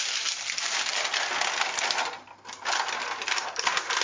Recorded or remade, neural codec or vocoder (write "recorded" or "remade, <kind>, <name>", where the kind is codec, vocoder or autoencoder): recorded